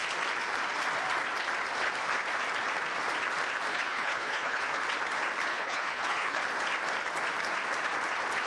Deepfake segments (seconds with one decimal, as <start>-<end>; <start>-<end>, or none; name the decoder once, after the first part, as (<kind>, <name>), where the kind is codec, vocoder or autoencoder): 3.7-4.6 (codec, HILCodec); 5.5-6.4